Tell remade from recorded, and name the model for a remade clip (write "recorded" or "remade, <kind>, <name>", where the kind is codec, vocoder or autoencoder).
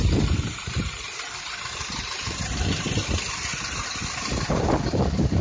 remade, vocoder, BigVGAN v2